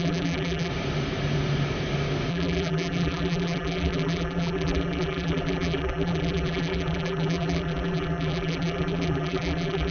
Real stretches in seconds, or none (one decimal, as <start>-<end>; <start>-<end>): 0.7-2.3